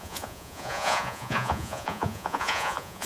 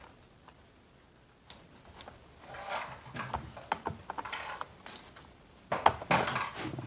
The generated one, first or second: first